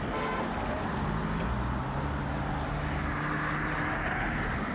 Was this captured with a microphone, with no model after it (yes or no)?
yes